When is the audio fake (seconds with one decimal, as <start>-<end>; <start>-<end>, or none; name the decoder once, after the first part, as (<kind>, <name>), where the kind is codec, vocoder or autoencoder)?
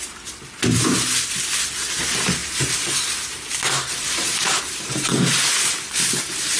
2.4-4.6 (vocoder, BigVGAN v2)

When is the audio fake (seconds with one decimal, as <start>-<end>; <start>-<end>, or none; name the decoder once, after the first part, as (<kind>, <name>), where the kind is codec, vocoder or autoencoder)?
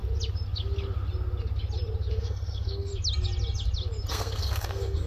2.1-2.9 (codec, SNAC); 4.1-5.1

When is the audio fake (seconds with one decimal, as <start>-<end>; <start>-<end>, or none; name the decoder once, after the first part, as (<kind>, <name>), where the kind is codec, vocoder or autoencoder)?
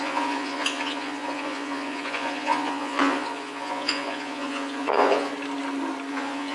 0.0-5.3 (vocoder, Vocos); 6.1-6.5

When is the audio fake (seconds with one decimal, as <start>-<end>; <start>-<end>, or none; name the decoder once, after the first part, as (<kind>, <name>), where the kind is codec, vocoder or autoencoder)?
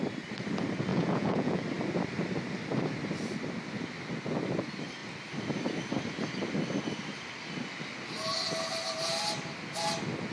0.9-1.6 (vocoder, Vocos)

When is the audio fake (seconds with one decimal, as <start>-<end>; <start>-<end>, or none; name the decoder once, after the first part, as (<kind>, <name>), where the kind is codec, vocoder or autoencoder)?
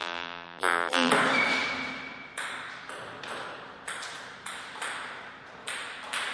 0.0-1.1 (vocoder, BigVGAN v2)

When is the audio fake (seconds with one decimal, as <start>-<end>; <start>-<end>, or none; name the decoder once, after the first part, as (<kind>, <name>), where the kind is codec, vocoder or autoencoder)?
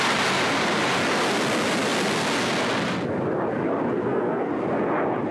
4.0-4.5 (codec, SNAC)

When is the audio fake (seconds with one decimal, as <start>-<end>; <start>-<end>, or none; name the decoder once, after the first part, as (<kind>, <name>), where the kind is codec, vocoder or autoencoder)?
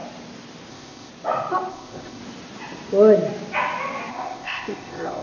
0.7-1.1 (codec, ZipCodec); 1.7-2.2; 4.1-5.2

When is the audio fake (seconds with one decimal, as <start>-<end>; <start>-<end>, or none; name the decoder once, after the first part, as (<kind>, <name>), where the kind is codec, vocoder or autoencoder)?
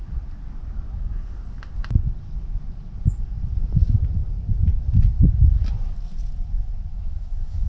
6.9-7.7 (autoencoder, DAC-VAE)